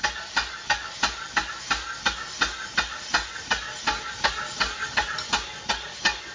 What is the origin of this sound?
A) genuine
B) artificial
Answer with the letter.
A